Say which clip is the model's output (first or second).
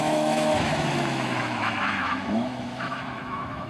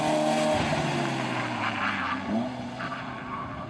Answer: first